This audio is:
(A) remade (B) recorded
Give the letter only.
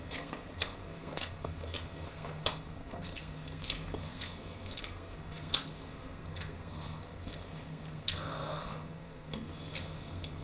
A